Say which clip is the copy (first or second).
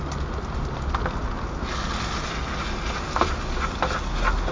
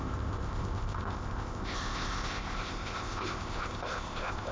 second